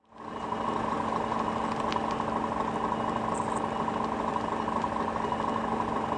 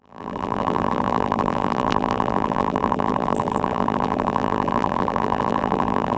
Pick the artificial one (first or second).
second